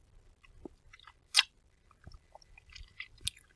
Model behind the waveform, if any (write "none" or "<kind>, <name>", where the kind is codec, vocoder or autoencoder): none